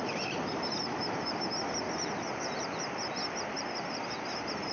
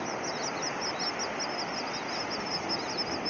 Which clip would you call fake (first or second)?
first